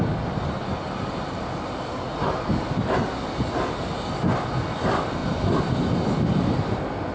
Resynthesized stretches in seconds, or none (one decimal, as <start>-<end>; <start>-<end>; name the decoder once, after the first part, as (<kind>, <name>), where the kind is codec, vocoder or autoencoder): none